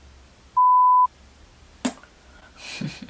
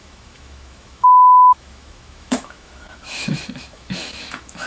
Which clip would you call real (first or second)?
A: first